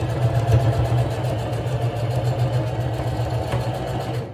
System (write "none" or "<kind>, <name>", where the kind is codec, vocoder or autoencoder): none